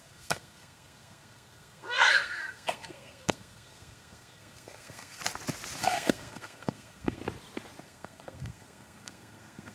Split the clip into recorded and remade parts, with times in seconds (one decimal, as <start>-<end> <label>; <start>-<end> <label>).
0.0-5.2 remade; 5.2-5.8 recorded; 5.8-7.2 remade; 7.2-7.8 recorded; 7.8-9.7 remade